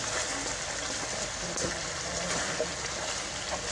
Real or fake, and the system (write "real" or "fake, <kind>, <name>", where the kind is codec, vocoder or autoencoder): real